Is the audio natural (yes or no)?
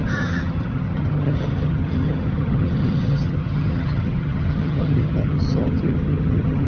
no